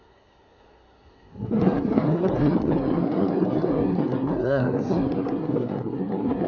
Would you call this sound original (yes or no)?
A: no